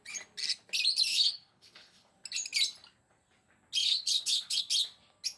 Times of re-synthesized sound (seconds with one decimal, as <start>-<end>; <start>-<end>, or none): 1.1-2.1; 3.8-4.6

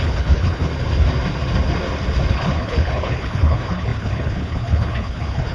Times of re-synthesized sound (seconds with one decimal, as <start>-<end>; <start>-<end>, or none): 0.0-0.7; 2.3-5.5